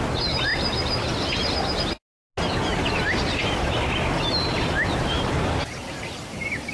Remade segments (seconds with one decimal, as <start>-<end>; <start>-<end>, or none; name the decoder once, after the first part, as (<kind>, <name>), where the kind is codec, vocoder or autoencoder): 0.5-1.8 (vocoder, BigVGAN v2); 2.7-6.7